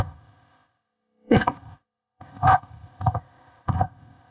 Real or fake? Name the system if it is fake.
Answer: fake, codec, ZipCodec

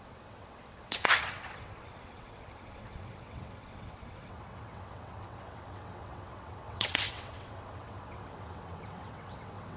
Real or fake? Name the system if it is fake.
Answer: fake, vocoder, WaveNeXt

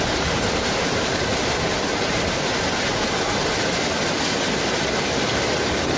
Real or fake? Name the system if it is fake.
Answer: real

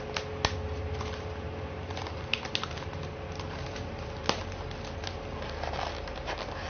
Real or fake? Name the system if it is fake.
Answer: real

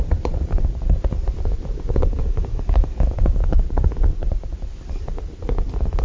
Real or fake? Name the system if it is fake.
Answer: fake, vocoder, BigVGAN v2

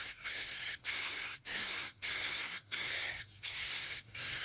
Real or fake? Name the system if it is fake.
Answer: fake, codec, SNAC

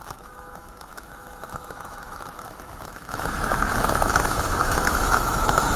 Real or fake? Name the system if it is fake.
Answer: fake, autoencoder, DAC-VAE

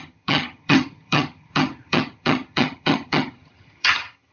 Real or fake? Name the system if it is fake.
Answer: fake, vocoder, HiFi-GAN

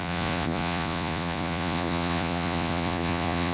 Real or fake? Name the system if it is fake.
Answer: fake, vocoder, Vocos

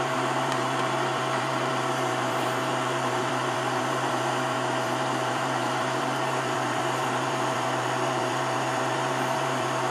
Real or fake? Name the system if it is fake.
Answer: fake, vocoder, BigVGAN v2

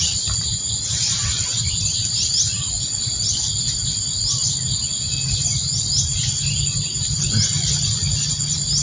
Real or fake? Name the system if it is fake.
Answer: real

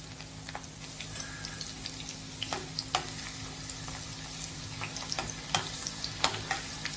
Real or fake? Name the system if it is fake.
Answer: real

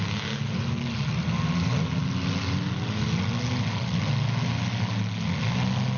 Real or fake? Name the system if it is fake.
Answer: real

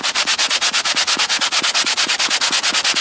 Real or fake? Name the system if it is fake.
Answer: fake, vocoder, Vocos